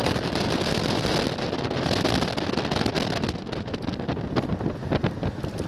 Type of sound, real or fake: real